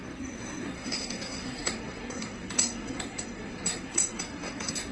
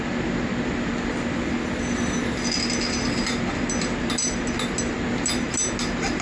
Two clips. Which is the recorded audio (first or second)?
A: second